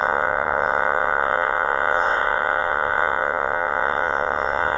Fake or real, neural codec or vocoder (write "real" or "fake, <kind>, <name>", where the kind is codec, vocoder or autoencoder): fake, vocoder, WaveNeXt